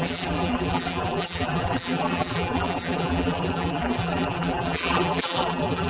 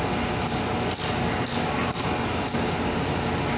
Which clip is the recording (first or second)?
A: second